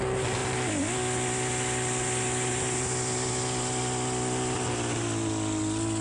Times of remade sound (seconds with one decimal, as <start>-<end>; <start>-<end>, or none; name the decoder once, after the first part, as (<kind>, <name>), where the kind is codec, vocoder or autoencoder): none